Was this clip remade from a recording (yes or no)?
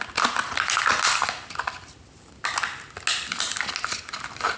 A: no